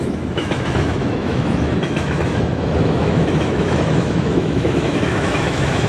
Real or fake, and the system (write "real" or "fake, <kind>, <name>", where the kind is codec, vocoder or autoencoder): fake, autoencoder, DAC-VAE